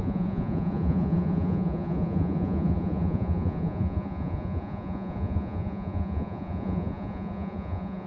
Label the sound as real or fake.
fake